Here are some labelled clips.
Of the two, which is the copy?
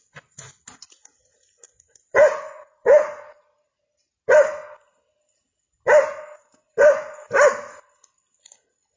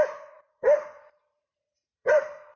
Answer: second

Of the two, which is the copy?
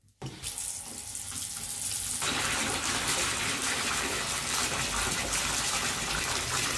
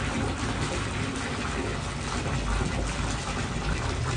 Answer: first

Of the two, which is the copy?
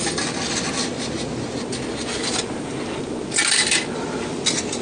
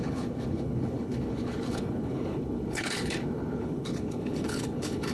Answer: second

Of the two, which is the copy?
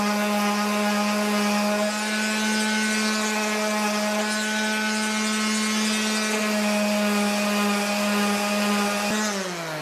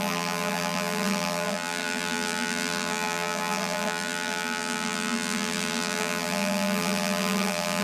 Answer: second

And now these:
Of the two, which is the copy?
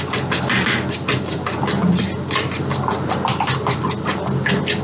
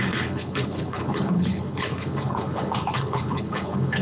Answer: second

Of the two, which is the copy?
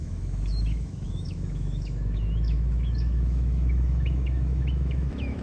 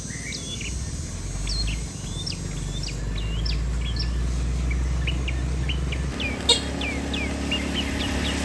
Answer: first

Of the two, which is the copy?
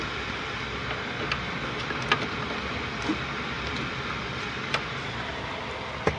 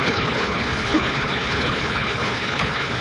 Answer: second